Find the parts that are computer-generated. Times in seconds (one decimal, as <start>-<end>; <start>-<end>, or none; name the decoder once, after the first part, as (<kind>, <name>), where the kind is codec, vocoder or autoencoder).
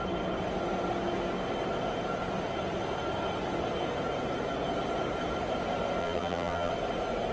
6.0-6.7 (vocoder, BigVGAN v2)